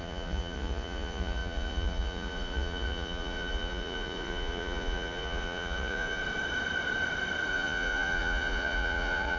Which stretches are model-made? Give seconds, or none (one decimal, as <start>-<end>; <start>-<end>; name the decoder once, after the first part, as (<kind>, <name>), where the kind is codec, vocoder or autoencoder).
0.0-6.2 (vocoder, Vocos); 7.5-9.4